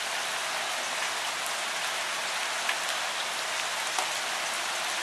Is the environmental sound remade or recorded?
recorded